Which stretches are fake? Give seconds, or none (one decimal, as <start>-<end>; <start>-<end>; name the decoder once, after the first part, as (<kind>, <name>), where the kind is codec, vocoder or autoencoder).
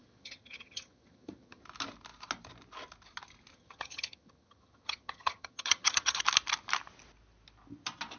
0.0-1.6 (vocoder, HiFi-GAN); 3.5-6.2